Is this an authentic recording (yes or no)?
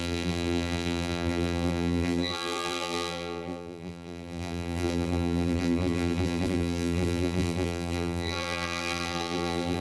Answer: no